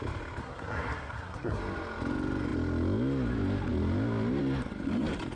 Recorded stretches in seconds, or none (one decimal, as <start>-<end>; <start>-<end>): 0.0-0.4; 1.6-5.3

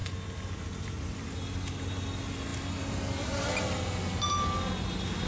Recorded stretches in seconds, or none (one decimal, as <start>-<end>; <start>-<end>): 0.0-5.3